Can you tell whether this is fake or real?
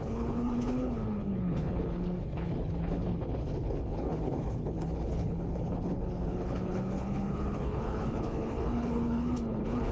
fake